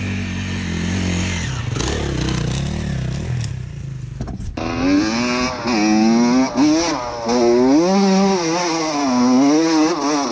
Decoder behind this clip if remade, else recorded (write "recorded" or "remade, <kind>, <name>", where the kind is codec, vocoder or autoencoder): recorded